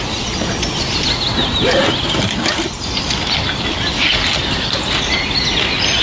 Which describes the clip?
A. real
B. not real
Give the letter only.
A